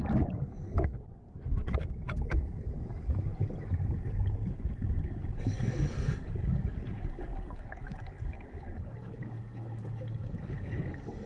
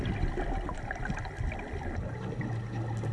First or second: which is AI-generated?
first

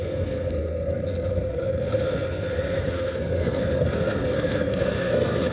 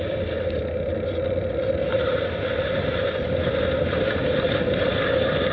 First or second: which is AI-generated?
first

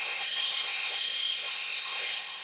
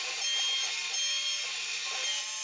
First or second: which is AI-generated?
first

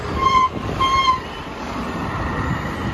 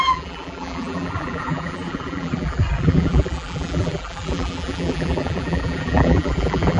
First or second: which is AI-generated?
second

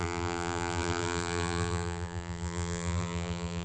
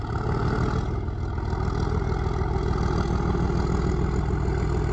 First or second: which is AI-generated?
first